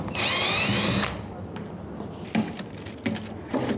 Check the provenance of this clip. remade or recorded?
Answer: recorded